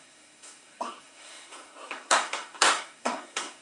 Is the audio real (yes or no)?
no